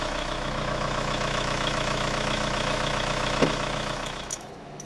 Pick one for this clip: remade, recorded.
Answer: remade